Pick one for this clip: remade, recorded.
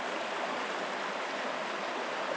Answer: recorded